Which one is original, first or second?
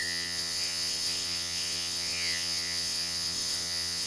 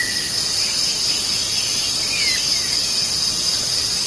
second